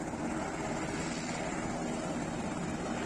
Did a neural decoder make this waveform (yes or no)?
no